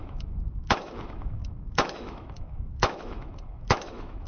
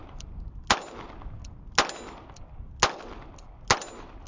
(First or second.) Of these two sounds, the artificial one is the first